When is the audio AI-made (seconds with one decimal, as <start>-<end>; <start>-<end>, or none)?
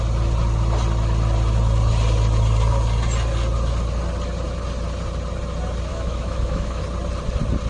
5.9-6.8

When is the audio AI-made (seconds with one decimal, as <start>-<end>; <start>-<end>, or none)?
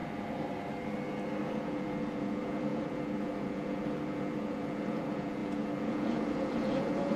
1.4-7.2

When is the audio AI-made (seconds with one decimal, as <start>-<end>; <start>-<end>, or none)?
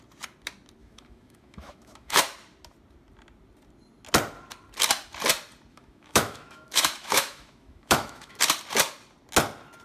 0.8-2.2; 5.7-8.4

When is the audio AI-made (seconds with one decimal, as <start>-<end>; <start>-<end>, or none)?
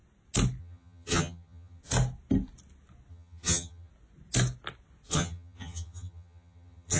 0.6-1.8; 3.1-3.9; 5.1-7.0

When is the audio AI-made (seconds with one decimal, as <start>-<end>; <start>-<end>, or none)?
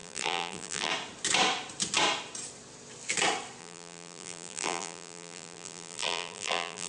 0.0-0.9; 3.6-6.9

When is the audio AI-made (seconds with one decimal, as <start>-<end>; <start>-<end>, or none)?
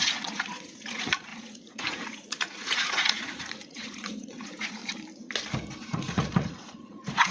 0.0-4.8; 5.8-7.3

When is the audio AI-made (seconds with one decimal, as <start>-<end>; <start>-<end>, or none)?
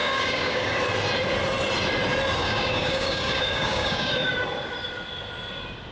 0.0-0.8; 2.4-4.3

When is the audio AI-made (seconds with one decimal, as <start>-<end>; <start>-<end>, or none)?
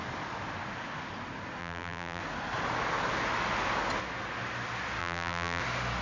1.6-2.2; 5.0-5.6